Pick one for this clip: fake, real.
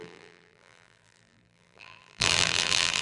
fake